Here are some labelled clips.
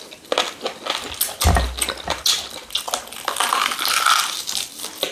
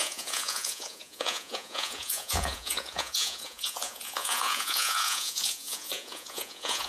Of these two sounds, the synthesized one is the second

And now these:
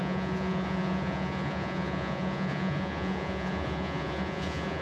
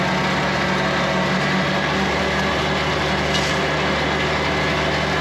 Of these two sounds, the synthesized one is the first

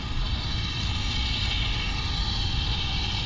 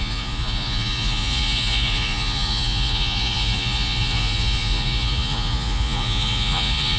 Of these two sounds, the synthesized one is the second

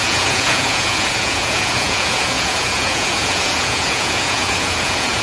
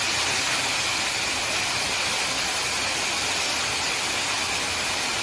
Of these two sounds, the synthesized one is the first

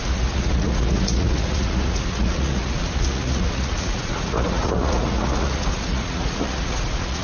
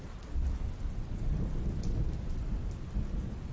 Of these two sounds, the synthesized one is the first